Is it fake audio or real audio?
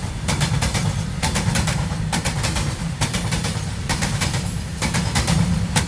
fake